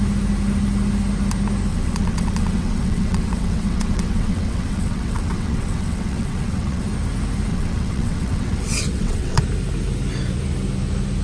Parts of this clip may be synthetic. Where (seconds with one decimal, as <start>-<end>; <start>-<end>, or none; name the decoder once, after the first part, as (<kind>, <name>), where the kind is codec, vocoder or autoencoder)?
1.7-6.8 (vocoder, WaveNeXt); 7.5-9.4